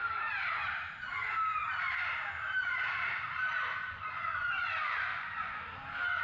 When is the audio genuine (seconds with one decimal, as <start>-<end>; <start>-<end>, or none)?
0.0-3.8; 5.6-6.2